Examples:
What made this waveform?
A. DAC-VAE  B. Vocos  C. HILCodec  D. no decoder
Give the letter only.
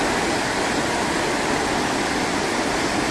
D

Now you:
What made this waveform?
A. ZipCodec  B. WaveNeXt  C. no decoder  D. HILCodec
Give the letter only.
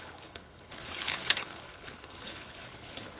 D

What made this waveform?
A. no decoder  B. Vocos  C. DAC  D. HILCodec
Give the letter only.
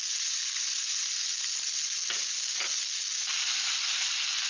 A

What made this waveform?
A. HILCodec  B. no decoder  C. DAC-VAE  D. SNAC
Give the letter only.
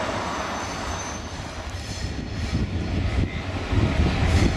B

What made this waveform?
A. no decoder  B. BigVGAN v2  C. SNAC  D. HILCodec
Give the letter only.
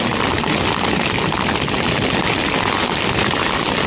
A